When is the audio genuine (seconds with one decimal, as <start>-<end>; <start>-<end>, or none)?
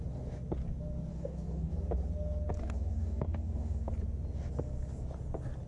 0.0-1.1; 1.7-2.6; 3.9-5.7